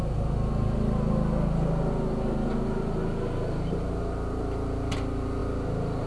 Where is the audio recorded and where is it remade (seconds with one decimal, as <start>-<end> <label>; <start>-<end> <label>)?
0.0-6.1 recorded